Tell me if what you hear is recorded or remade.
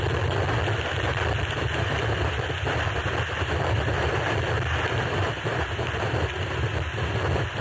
recorded